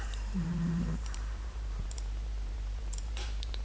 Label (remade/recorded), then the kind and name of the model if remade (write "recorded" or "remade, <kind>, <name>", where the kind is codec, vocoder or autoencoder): remade, vocoder, BigVGAN v2